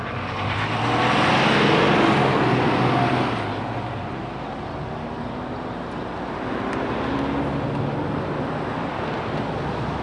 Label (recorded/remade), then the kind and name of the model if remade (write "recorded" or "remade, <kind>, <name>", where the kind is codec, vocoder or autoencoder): recorded